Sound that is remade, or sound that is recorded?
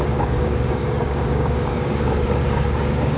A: remade